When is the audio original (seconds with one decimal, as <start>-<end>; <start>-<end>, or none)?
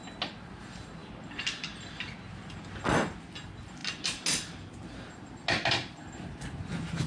0.0-7.1